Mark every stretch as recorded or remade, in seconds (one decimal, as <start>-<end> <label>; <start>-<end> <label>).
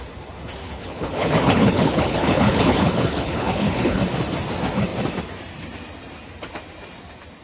0.0-0.6 recorded; 0.6-4.0 remade; 4.0-7.4 recorded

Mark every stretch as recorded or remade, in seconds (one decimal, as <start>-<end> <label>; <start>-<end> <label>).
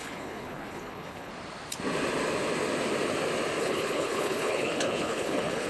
0.0-1.3 remade; 1.3-3.6 recorded; 3.6-5.7 remade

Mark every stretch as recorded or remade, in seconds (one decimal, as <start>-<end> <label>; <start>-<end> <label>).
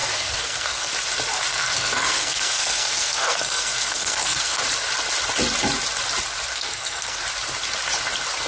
0.0-0.9 remade; 0.9-1.5 recorded; 1.5-4.6 remade; 4.6-6.5 recorded; 6.5-7.2 remade; 7.2-8.5 recorded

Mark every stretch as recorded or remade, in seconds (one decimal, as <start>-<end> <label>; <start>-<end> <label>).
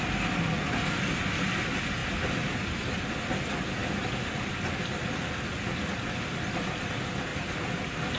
0.0-7.3 recorded; 7.3-8.2 remade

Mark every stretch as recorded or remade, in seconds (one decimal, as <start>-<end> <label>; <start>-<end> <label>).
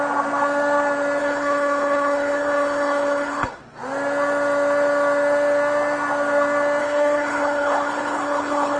0.0-1.2 recorded; 1.2-3.6 remade; 3.6-6.8 recorded; 6.8-8.8 remade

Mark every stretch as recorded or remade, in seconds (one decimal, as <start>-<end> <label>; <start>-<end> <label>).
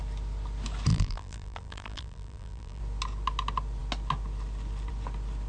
0.0-0.9 recorded; 0.9-2.8 remade; 2.8-5.5 recorded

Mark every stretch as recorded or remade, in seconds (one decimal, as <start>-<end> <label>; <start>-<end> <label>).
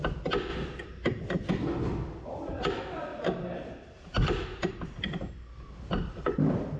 0.0-0.5 recorded; 0.5-1.5 remade; 1.5-3.1 recorded; 3.1-5.3 remade; 5.3-6.8 recorded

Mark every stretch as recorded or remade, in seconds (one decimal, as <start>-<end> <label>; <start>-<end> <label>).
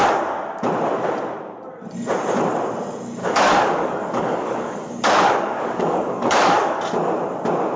0.0-3.2 recorded; 3.2-6.8 remade; 6.8-7.8 recorded